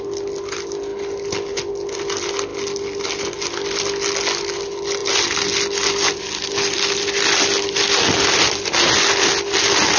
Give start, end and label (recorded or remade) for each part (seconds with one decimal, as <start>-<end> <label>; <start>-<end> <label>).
0.0-2.5 recorded; 2.5-3.8 remade; 3.8-5.0 recorded; 5.0-8.9 remade; 8.9-10.0 recorded

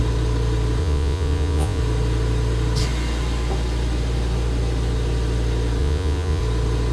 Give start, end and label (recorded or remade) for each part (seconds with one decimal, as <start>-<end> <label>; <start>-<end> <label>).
0.0-0.8 recorded; 0.8-1.8 remade; 1.8-5.8 recorded; 5.8-6.4 remade; 6.4-6.9 recorded

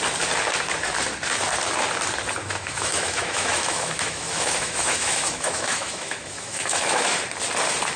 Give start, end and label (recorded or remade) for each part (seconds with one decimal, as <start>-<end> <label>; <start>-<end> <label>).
0.0-2.4 recorded; 2.4-7.2 remade; 7.2-8.0 recorded

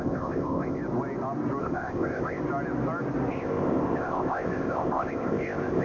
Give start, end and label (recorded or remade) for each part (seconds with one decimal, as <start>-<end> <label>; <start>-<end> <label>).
0.0-0.8 remade; 0.8-1.6 recorded; 1.6-2.4 remade; 2.4-3.3 recorded; 3.3-5.8 remade

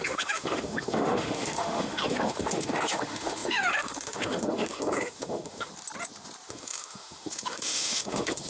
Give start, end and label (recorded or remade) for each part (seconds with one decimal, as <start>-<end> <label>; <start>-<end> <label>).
0.0-5.7 remade; 5.7-6.5 recorded; 6.5-8.5 remade

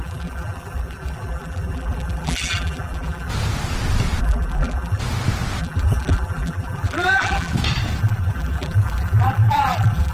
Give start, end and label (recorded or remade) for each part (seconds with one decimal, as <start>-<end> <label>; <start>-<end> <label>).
0.0-3.3 remade; 3.3-4.2 recorded; 4.2-5.0 remade; 5.0-5.6 recorded; 5.6-7.5 remade; 7.5-8.0 recorded; 8.0-10.1 remade

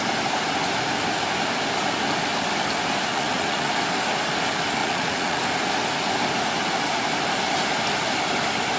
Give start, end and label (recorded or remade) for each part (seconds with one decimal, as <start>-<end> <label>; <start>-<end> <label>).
0.0-3.1 recorded; 3.1-3.7 remade; 3.7-4.8 recorded; 4.8-5.4 remade; 5.4-8.8 recorded